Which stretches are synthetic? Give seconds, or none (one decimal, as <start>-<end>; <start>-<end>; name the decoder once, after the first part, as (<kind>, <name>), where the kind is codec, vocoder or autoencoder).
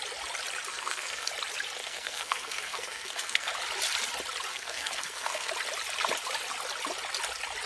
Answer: 0.7-1.3 (codec, SNAC); 1.8-3.5; 4.5-5.5